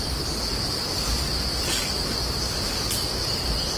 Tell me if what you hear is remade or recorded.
recorded